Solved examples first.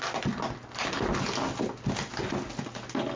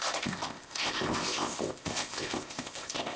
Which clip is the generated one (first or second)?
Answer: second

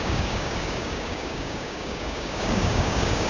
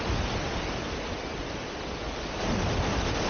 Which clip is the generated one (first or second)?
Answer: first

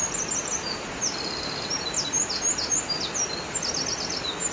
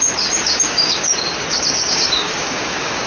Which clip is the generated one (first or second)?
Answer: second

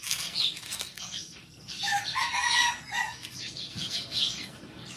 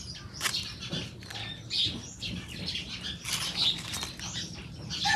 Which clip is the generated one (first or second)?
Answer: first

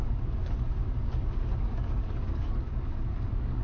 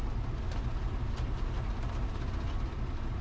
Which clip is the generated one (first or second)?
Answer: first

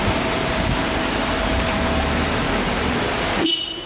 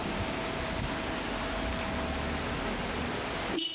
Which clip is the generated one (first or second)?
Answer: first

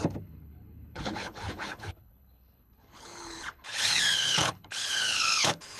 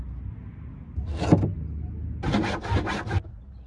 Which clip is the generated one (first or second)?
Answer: first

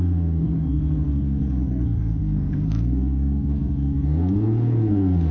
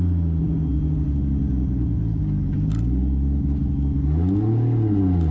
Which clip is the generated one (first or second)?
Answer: first